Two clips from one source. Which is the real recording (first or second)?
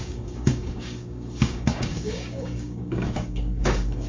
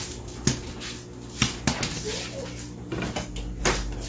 second